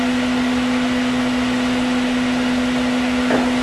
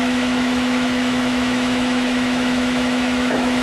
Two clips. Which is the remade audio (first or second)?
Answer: second